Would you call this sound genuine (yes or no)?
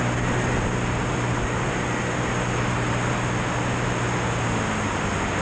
yes